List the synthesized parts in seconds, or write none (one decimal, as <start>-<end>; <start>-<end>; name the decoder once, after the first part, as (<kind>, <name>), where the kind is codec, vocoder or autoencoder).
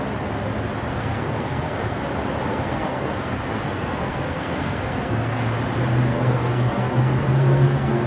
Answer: 0.9-2.0 (codec, SNAC); 2.5-5.4; 6.1-8.1